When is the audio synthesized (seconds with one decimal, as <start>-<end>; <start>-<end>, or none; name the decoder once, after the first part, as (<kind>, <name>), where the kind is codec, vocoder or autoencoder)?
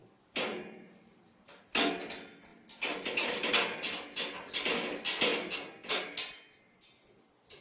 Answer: 0.0-1.9 (vocoder, BigVGAN v2); 2.5-3.5